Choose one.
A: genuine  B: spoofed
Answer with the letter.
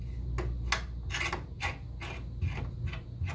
A